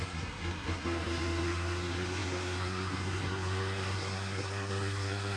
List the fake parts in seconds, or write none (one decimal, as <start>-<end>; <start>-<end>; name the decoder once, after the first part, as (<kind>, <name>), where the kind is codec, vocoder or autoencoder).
0.0-5.4 (codec, SNAC)